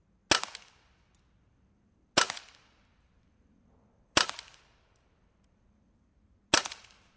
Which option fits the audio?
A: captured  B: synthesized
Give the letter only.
A